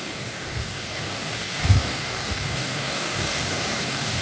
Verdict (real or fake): fake